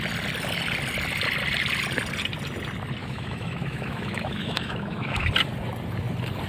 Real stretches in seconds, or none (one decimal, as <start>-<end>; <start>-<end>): 0.0-3.0; 5.3-6.5